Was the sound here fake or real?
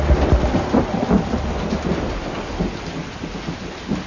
real